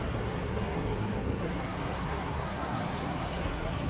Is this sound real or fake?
fake